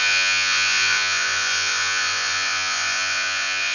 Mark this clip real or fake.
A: fake